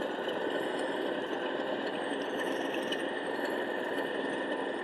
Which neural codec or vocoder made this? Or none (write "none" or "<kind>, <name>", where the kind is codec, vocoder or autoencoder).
none